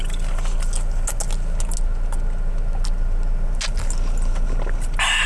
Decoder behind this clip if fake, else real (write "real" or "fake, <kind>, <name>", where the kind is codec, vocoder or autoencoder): real